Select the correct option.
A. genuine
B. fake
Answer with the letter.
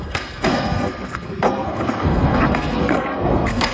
B